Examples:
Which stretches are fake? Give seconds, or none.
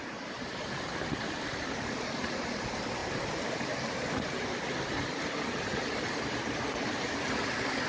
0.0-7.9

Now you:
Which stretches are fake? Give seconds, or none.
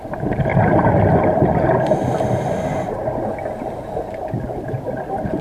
none